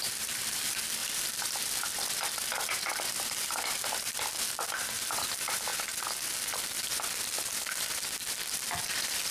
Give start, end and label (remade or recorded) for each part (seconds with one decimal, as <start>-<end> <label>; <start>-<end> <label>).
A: 0.0-5.7 remade; 5.7-6.3 recorded; 6.3-9.3 remade